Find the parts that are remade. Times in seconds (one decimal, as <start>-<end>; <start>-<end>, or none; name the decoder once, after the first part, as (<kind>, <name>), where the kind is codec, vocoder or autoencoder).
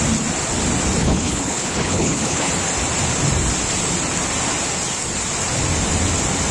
1.0-2.5 (codec, HILCodec)